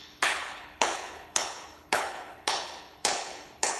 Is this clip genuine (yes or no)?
no